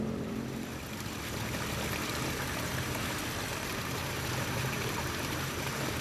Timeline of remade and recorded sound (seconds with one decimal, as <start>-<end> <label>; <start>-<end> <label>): 0.0-0.7 remade; 0.7-2.2 recorded; 2.2-3.2 remade; 3.2-3.7 recorded; 3.7-6.0 remade